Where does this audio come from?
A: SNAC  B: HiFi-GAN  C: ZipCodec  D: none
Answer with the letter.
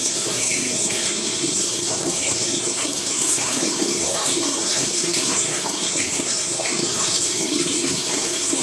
A